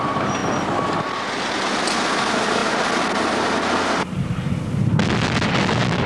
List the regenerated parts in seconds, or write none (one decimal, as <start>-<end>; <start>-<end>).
none